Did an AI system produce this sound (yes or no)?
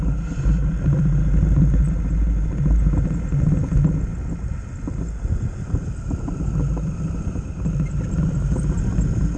no